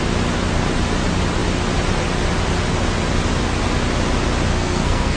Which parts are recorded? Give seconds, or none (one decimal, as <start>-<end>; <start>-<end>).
0.0-4.5